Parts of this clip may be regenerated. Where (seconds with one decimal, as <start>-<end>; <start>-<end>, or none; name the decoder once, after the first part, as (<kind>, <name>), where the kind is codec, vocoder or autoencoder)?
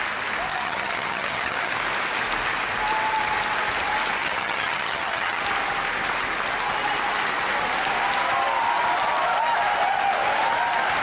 0.5-1.7 (vocoder, HiFi-GAN); 4.2-5.4